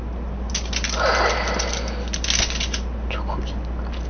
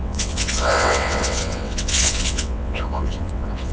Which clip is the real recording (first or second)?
first